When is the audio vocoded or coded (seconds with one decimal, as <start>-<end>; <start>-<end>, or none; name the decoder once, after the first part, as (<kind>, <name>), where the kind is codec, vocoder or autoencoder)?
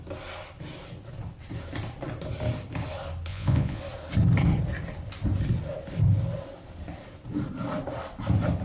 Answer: 3.3-3.8 (vocoder, Vocos)